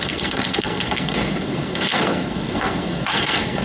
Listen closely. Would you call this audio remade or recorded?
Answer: remade